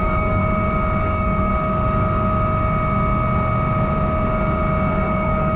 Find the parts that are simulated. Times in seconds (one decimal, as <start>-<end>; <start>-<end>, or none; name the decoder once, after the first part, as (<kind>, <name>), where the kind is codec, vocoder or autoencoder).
0.0-0.4 (codec, DAC); 1.0-1.5; 4.9-5.6